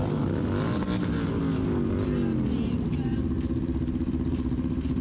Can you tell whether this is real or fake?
real